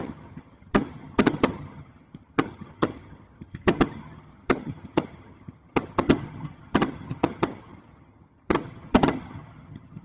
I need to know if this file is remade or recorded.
remade